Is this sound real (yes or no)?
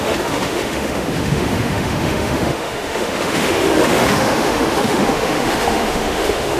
no